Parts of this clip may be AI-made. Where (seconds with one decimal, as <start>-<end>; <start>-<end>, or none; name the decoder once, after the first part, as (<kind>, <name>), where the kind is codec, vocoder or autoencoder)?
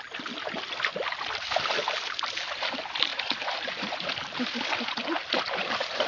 none